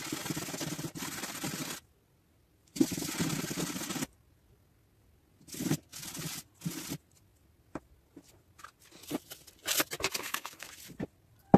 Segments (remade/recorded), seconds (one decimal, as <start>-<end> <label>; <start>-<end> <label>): 0.0-10.2 recorded; 10.2-10.7 remade; 10.7-11.6 recorded